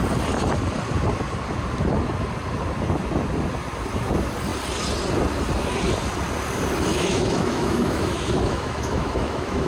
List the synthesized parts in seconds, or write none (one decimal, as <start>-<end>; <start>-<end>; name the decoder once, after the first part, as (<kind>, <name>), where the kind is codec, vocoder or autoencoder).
6.9-9.7 (autoencoder, DAC-VAE)